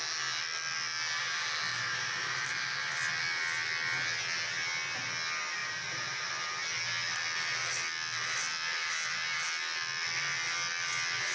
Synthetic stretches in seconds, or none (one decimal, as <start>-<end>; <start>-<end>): 1.7-2.8; 5.6-6.3